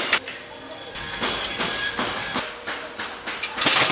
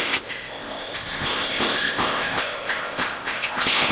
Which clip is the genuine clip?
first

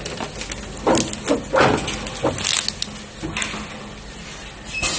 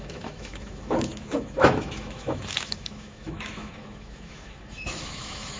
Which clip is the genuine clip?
first